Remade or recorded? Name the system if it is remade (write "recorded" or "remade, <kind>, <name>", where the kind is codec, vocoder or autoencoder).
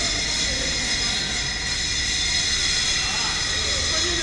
recorded